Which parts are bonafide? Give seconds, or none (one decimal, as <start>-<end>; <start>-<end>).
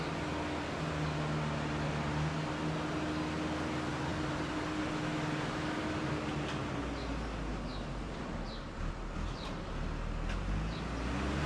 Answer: 0.0-4.1; 4.8-7.7; 8.9-11.5